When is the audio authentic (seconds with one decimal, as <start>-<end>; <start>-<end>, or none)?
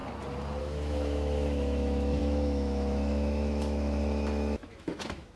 0.0-0.6